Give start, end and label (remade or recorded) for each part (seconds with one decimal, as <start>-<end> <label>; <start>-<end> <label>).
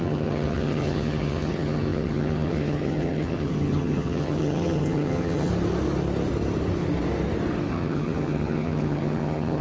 0.0-5.5 remade; 5.5-7.7 recorded; 7.7-9.6 remade